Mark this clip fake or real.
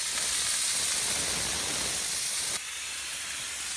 real